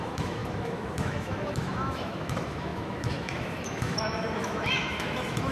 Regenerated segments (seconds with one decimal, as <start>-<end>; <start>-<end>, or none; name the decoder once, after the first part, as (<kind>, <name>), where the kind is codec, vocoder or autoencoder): 0.0-5.5 (autoencoder, DAC-VAE)